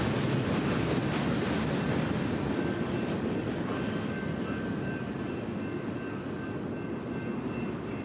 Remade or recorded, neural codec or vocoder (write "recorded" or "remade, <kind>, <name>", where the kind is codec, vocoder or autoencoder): recorded